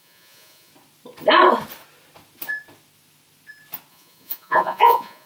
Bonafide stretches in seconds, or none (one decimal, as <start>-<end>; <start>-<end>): 0.7-3.9